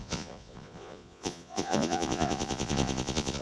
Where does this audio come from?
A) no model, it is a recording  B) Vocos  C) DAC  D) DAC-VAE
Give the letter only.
B